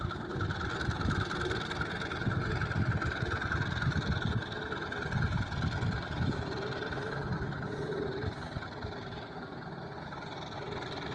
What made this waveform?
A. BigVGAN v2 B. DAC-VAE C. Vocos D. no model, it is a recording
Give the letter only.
D